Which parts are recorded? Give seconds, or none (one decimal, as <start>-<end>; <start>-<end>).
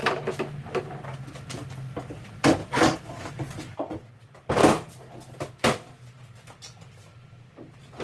0.0-2.6; 3.3-8.0